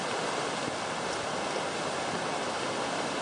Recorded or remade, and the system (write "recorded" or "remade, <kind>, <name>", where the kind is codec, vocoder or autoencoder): recorded